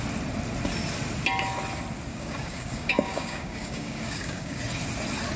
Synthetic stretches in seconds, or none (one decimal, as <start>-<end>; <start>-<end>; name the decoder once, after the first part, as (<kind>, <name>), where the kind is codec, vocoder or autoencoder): 2.1-4.6 (codec, DAC)